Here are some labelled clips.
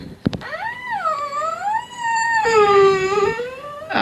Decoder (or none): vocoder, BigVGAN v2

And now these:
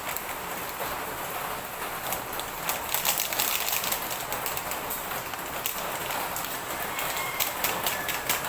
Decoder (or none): none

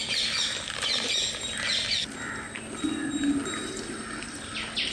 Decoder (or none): none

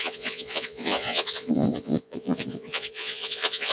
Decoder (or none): vocoder, Vocos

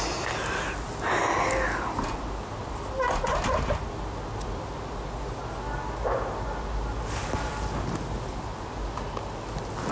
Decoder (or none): none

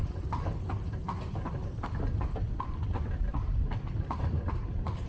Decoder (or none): none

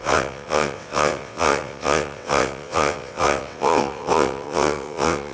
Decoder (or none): vocoder, WaveNeXt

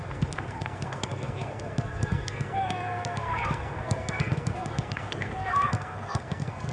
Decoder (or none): codec, SNAC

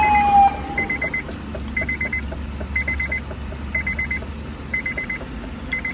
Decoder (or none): none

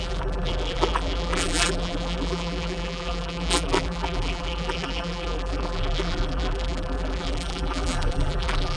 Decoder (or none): vocoder, BigVGAN v2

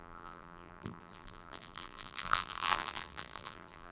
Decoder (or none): vocoder, BigVGAN v2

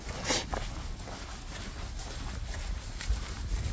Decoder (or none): none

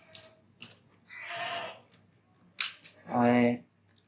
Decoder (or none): none